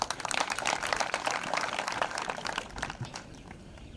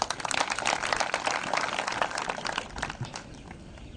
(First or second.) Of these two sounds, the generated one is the first